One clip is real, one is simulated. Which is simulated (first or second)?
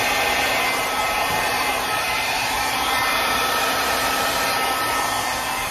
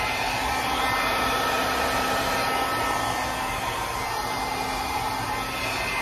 first